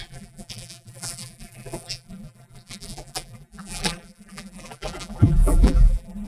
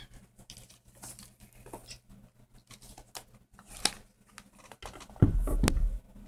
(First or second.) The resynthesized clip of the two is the first